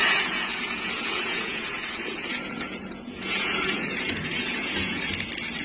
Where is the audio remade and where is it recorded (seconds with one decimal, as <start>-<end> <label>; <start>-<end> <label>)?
0.0-1.6 remade; 1.6-2.3 recorded; 2.3-5.1 remade; 5.1-5.6 recorded